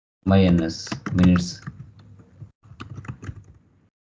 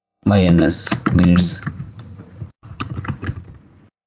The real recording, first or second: first